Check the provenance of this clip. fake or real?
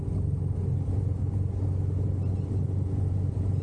real